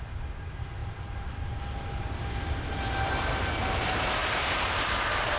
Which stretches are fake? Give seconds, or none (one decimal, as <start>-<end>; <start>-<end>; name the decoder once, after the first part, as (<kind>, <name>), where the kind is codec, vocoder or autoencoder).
4.2-4.9 (vocoder, BigVGAN v2)